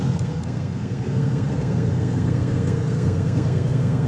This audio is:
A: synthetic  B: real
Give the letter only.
A